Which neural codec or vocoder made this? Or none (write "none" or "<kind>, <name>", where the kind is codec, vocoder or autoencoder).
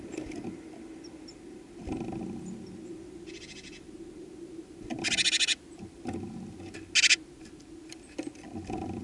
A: none